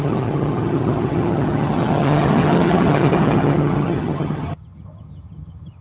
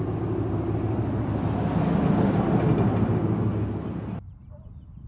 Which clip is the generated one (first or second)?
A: first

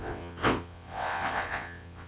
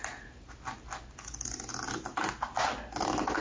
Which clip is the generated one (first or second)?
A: first